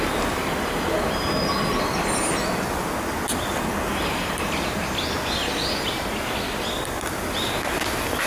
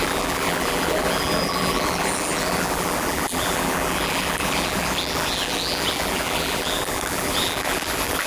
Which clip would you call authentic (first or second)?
first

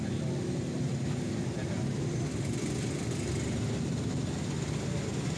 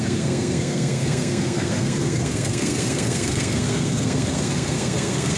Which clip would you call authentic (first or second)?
first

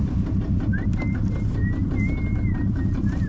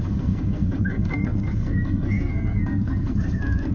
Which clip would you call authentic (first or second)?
first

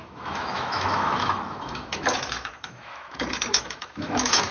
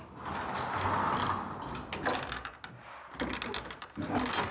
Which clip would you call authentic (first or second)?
second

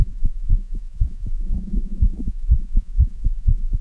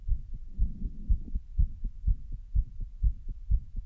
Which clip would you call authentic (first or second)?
second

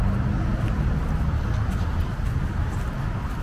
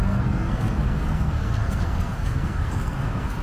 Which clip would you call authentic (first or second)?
first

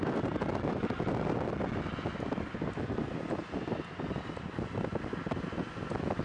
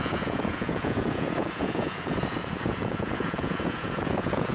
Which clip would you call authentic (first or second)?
first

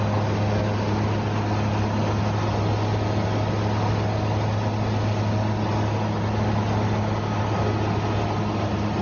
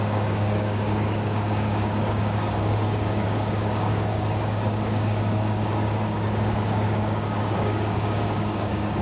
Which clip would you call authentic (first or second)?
first